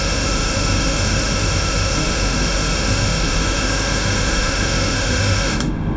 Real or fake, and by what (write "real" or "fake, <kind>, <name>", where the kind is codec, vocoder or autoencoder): fake, autoencoder, DAC-VAE